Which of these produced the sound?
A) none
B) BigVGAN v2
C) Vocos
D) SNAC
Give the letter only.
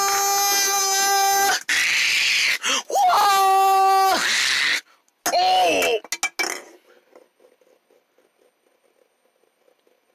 A